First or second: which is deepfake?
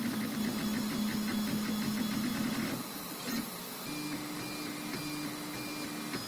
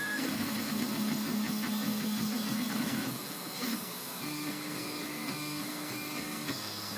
second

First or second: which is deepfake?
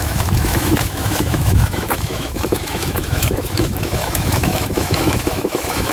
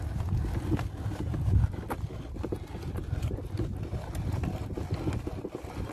first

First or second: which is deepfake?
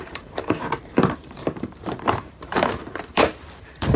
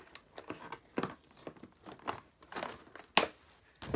first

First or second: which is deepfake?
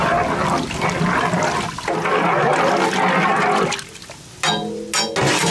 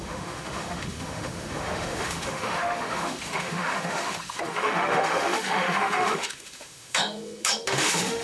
second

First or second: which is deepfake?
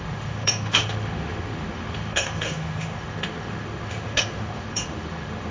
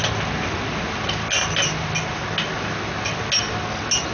first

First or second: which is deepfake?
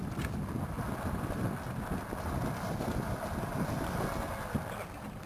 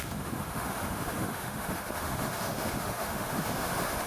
second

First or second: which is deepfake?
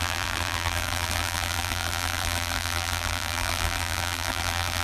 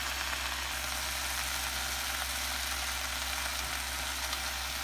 first